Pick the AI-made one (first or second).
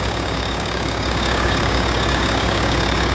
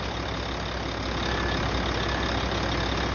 first